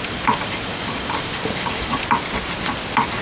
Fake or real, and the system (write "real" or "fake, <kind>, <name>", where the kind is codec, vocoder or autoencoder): real